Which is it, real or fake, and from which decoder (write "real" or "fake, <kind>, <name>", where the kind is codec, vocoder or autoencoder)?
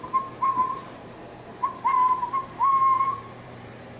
fake, vocoder, BigVGAN v2